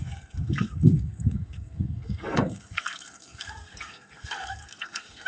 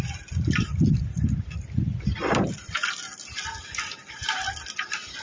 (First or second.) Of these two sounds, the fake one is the first